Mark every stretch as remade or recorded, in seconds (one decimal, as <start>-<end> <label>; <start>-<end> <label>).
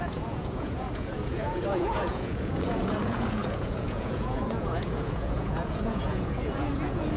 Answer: 0.0-7.2 remade